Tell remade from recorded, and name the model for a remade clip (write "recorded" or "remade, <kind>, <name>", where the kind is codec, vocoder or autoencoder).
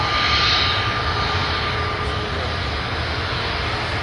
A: recorded